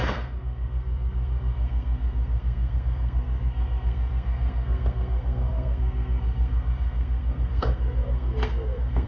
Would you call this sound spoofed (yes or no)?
yes